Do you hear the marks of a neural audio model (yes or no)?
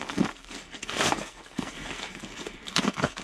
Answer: yes